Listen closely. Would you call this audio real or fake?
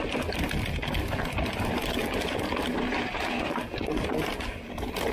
real